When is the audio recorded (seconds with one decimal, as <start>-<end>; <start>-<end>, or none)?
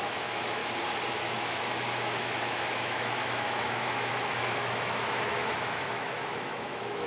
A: 0.6-1.1